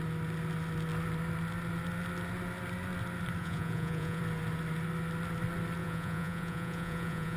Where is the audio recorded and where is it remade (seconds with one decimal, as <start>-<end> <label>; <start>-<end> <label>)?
0.0-3.4 recorded; 3.4-4.2 remade; 4.2-5.8 recorded; 5.8-7.4 remade